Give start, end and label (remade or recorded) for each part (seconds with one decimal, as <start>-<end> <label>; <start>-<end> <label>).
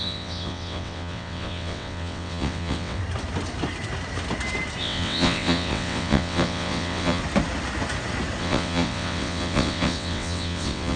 0.0-3.0 remade; 3.0-4.8 recorded; 4.8-7.2 remade; 7.2-8.4 recorded; 8.4-11.0 remade